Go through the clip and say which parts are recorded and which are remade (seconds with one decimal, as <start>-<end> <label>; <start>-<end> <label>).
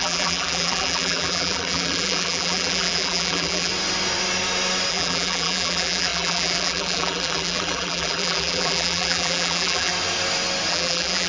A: 0.0-3.7 remade; 3.7-4.9 recorded; 4.9-9.9 remade; 9.9-10.7 recorded; 10.7-11.3 remade